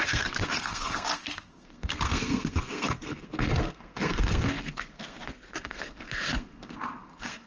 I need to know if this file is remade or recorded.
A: remade